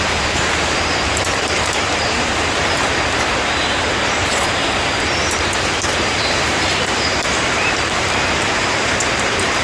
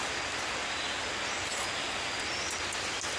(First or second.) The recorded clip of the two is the second